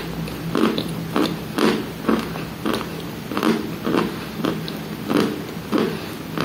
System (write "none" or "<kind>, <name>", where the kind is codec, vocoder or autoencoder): none